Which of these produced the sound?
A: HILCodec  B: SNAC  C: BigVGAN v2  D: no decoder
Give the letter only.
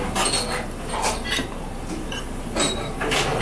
D